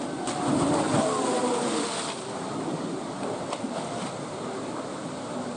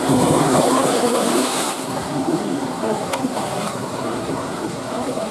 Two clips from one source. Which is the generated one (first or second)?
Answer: second